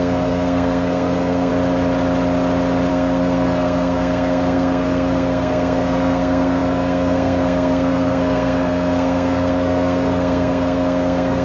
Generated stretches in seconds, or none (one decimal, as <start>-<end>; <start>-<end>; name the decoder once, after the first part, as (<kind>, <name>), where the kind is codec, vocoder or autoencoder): 0.0-1.5 (codec, SNAC); 2.9-11.4